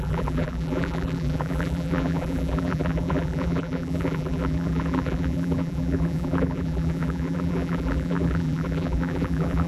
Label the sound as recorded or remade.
remade